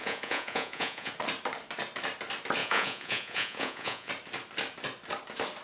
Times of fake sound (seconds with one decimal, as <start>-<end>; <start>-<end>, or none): 0.0-1.1; 2.6-4.1

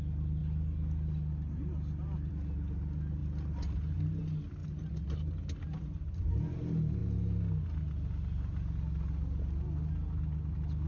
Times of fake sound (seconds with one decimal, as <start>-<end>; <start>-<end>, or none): none

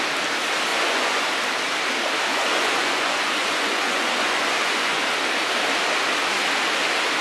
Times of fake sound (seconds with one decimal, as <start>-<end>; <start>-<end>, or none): 0.7-1.3; 2.3-5.0

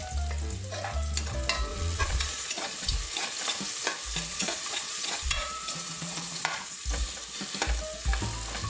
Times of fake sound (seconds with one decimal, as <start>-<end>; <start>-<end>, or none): 1.7-2.9; 4.3-6.8

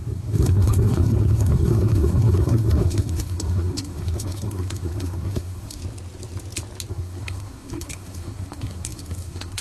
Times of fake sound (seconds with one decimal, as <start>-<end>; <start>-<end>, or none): 0.0-5.8; 6.9-9.6

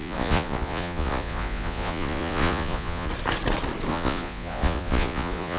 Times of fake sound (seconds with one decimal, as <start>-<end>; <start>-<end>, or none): 0.0-3.1; 3.9-5.6

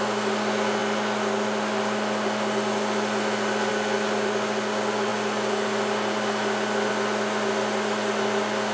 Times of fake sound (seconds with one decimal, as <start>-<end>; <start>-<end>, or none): none

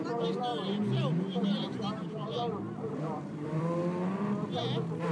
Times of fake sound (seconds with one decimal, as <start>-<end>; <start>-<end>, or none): 0.5-3.6